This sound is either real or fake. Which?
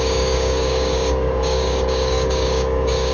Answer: fake